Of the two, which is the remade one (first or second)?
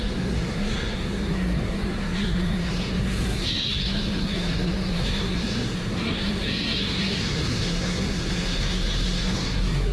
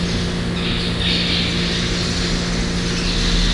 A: first